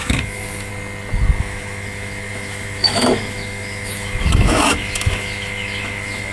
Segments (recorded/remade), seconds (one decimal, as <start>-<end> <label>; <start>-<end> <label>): 0.0-0.7 remade; 0.7-1.4 recorded; 1.4-6.3 remade